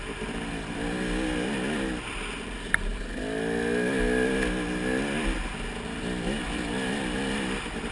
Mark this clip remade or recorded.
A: recorded